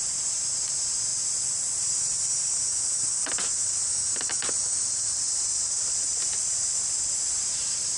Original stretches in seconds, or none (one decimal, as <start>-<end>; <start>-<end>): 1.1-1.8; 2.6-7.4